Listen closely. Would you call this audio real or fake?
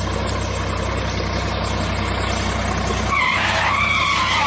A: real